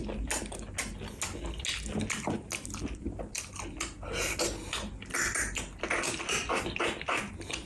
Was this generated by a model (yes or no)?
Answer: no